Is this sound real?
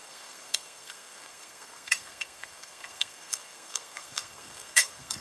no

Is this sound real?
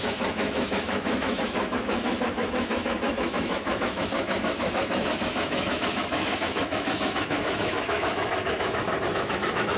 no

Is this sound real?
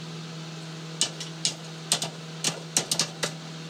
yes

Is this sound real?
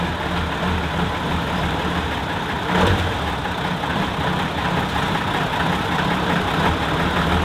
no